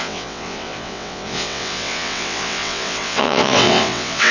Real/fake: fake